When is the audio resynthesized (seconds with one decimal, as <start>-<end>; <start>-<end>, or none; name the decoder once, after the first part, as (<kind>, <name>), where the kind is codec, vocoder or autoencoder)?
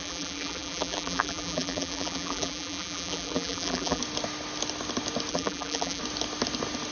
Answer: 0.0-4.0 (vocoder, BigVGAN v2); 5.3-6.0